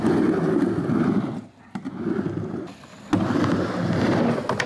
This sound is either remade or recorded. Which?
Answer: recorded